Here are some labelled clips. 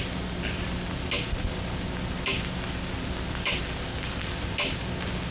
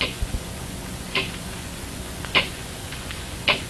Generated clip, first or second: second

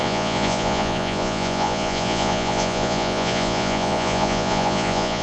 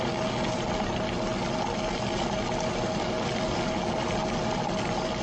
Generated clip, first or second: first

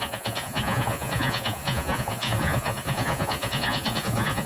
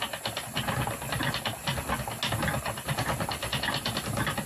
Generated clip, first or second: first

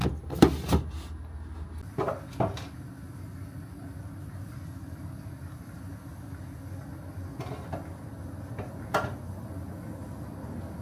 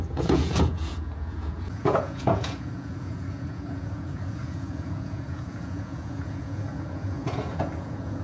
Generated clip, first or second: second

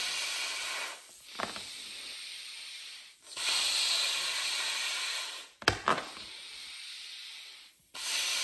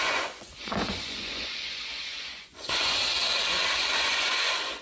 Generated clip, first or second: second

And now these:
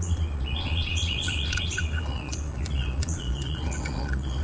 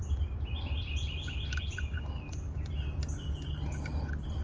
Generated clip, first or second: first